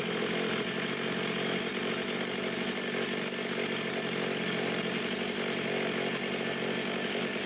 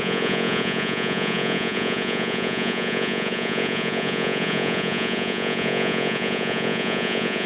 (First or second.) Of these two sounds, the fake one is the second